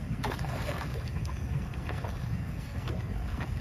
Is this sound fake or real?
fake